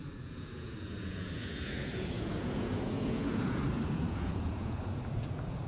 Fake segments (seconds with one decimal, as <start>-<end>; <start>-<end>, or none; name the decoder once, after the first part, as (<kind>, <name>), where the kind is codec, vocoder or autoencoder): 0.0-5.7 (vocoder, Vocos)